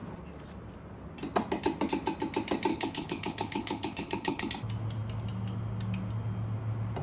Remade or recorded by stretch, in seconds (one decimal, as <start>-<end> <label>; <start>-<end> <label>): 0.0-2.7 recorded; 2.7-4.5 remade; 4.5-7.0 recorded